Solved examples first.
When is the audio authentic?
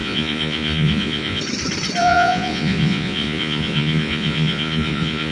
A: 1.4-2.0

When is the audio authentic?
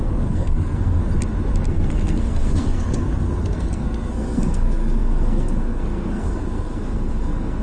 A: 1.0-1.7